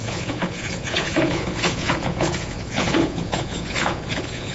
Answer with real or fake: fake